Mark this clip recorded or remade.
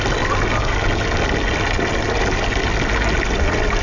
recorded